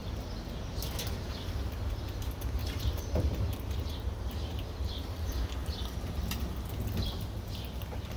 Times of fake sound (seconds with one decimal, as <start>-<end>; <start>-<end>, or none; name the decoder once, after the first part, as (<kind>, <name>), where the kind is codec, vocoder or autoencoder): 2.6-5.3 (vocoder, BigVGAN v2)